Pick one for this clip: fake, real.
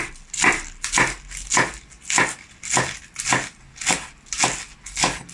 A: real